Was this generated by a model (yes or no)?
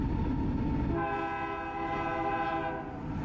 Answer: no